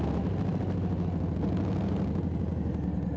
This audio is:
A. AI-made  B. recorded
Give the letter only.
B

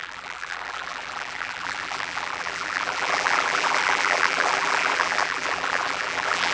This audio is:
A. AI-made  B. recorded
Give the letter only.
A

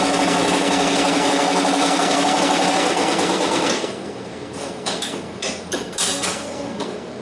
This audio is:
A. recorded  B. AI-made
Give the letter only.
B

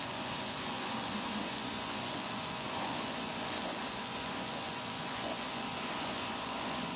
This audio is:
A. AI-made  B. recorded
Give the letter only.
A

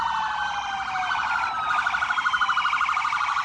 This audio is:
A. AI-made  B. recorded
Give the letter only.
B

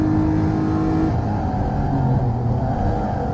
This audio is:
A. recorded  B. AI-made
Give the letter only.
A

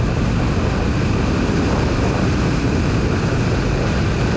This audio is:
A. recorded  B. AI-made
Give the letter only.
A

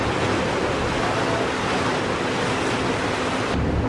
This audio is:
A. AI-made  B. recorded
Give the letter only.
B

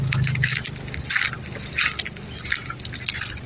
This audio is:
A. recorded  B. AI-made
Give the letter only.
A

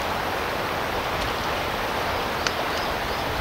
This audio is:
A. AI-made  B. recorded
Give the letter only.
B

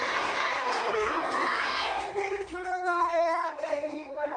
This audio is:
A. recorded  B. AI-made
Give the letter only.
B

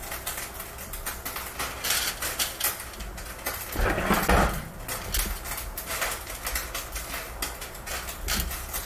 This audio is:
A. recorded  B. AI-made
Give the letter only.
A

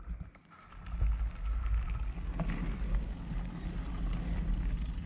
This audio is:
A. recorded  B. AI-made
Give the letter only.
A